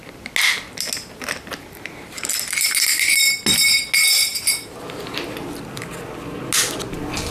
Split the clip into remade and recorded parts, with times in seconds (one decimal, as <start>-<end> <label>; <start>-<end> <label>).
0.0-7.3 recorded